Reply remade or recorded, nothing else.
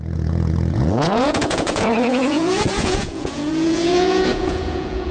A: remade